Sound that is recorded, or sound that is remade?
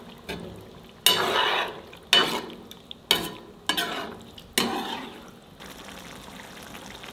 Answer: recorded